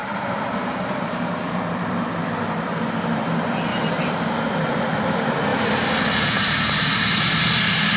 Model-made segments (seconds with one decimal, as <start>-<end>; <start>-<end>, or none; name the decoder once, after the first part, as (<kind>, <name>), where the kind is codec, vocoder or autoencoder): 0.0-1.6 (vocoder, BigVGAN v2); 3.7-4.9; 5.5-7.3